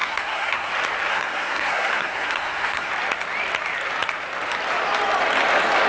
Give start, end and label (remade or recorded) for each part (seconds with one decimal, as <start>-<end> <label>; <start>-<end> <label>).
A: 0.0-0.7 remade; 0.7-1.1 recorded; 1.1-2.9 remade; 2.9-5.9 recorded